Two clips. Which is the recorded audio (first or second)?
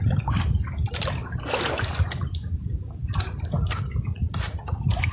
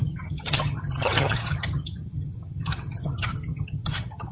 first